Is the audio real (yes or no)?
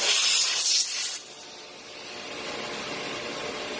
yes